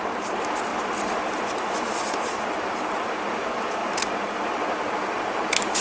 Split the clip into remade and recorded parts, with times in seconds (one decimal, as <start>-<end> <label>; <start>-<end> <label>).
0.0-5.8 recorded